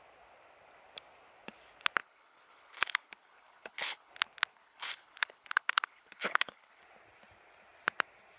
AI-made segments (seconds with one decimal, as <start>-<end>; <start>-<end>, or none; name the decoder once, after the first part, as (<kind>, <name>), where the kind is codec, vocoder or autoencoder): 2.0-4.1 (codec, HILCodec); 4.5-6.8